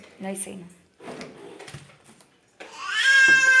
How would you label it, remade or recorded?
recorded